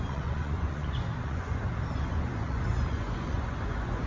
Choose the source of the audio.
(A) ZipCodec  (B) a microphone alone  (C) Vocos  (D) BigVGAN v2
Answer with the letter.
C